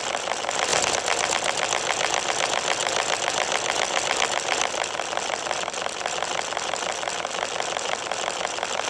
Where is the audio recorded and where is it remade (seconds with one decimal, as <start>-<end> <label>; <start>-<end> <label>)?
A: 0.0-0.7 remade; 0.7-2.3 recorded; 2.3-8.9 remade